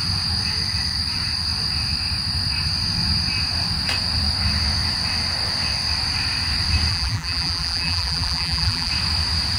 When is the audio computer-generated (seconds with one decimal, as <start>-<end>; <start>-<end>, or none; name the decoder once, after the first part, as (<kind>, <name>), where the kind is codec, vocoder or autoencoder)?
6.9-8.9 (vocoder, BigVGAN v2)